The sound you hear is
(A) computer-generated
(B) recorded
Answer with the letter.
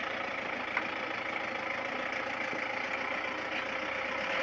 B